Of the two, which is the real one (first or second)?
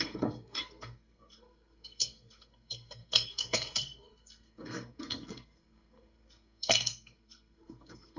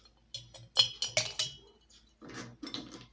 second